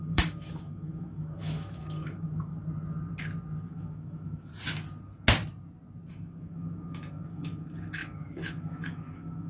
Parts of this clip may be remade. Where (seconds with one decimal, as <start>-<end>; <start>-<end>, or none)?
0.0-2.5; 3.7-4.5; 6.1-9.5